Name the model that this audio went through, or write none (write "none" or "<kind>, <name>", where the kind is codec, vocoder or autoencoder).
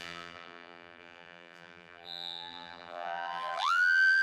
vocoder, BigVGAN v2